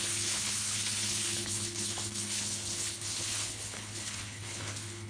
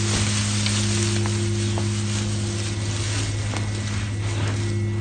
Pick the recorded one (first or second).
second